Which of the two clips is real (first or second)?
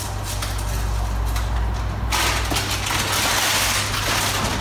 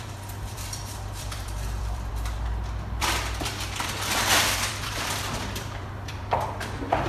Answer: first